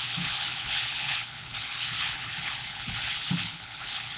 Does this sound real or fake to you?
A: fake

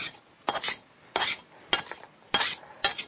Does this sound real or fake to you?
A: real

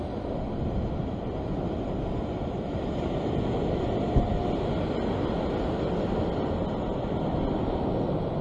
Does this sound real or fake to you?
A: real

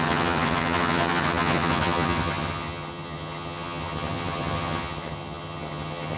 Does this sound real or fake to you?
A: fake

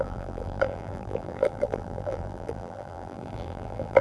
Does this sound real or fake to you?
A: fake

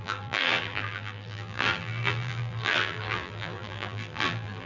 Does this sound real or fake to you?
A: fake